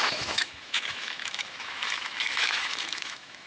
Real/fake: fake